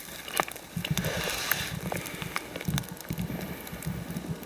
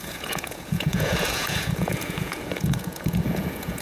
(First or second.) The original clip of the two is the first